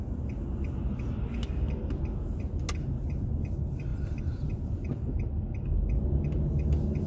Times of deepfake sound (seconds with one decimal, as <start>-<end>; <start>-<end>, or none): 3.9-4.5